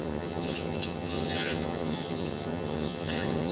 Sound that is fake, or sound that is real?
fake